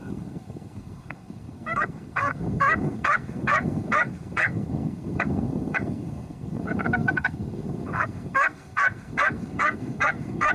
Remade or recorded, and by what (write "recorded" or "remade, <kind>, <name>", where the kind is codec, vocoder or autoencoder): remade, codec, SNAC